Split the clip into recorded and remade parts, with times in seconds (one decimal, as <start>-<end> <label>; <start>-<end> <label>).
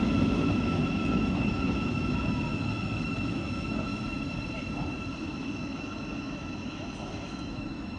0.0-3.9 remade; 3.9-5.1 recorded; 5.1-8.0 remade